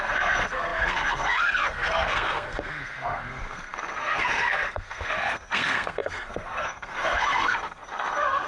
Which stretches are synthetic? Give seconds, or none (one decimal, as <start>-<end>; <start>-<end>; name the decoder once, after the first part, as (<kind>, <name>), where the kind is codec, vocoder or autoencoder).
0.0-8.5 (codec, SNAC)